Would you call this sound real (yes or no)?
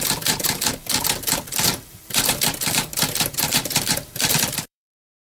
no